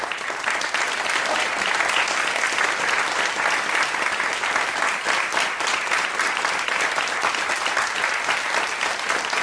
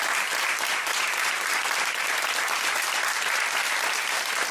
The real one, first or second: first